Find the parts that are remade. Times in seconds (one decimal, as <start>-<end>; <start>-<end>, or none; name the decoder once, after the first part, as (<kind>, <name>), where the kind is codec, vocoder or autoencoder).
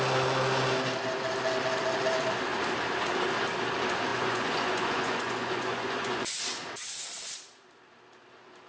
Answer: 4.1-6.4 (vocoder, Vocos)